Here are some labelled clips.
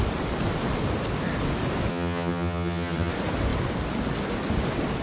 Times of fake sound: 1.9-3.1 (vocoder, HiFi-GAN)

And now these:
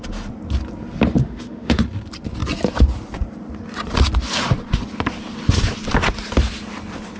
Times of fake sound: 1.2-1.8 (autoencoder, DAC-VAE)

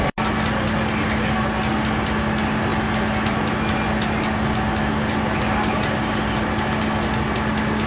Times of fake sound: none

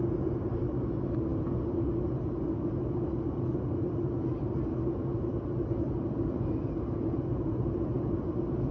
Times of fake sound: none

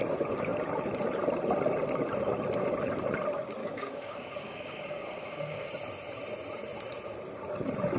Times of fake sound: 3.6-5.7 (codec, DAC)